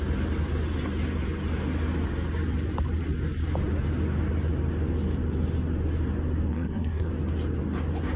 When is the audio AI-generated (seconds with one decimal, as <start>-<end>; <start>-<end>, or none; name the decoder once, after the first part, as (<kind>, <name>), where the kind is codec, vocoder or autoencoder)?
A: 6.5-7.1 (codec, SNAC)